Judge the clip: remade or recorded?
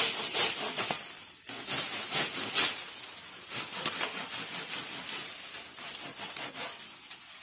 recorded